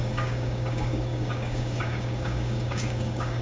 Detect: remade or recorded remade